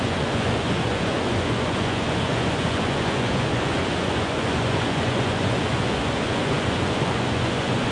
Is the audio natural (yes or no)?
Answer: no